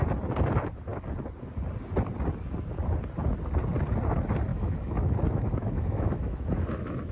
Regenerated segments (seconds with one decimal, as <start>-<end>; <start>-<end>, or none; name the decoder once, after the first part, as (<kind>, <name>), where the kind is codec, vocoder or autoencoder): 4.5-7.1 (autoencoder, DAC-VAE)